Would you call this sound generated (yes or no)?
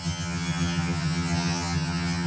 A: yes